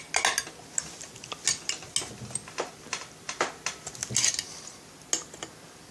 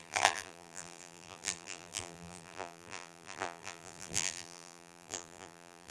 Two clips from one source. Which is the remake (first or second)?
second